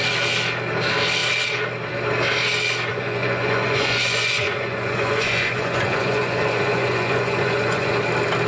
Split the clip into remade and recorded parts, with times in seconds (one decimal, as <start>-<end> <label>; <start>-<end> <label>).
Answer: 0.0-2.9 recorded; 2.9-8.0 remade; 8.0-8.5 recorded